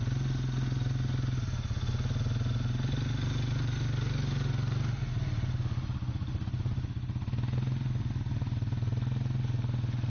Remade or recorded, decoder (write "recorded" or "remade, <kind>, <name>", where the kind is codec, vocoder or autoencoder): recorded